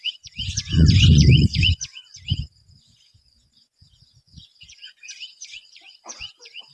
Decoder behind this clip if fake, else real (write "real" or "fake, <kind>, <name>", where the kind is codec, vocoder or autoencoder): fake, vocoder, Vocos